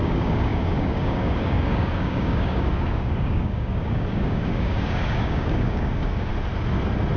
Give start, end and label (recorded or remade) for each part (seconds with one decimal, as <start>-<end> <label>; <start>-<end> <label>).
0.0-6.3 remade; 6.3-7.2 recorded